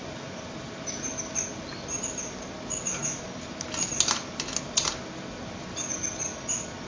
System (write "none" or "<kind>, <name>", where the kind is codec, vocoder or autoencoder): none